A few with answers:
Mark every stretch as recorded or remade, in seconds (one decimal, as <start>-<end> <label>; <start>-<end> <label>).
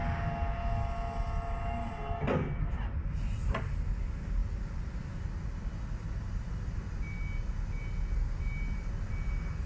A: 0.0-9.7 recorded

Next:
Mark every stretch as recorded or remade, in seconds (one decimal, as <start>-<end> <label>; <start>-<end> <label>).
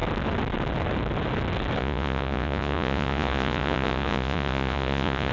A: 0.0-1.8 recorded; 1.8-5.3 remade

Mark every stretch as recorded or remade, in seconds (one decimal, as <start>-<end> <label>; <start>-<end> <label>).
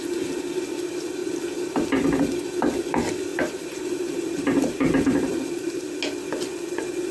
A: 0.0-3.3 recorded; 3.3-5.9 remade; 5.9-7.1 recorded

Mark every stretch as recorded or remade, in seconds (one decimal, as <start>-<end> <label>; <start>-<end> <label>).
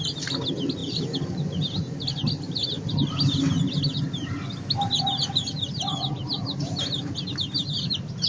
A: 0.0-8.3 recorded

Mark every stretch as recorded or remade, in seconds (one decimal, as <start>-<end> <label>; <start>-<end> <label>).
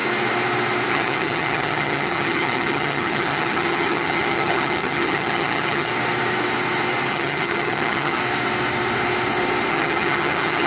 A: 0.0-0.9 recorded; 0.9-5.9 remade; 5.9-7.1 recorded; 7.1-8.2 remade; 8.2-9.7 recorded; 9.7-10.7 remade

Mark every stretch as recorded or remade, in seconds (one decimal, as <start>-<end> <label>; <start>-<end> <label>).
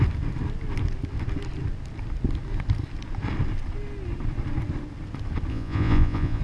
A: 0.0-5.5 recorded; 5.5-6.4 remade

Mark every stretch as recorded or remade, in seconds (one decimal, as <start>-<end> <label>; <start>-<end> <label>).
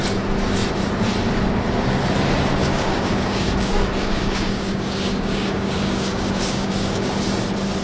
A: 0.0-2.6 recorded; 2.6-7.2 remade; 7.2-7.8 recorded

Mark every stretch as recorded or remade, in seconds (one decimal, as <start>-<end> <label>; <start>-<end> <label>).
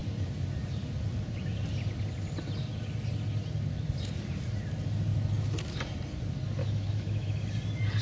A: 0.0-6.6 recorded; 6.6-7.4 remade; 7.4-8.0 recorded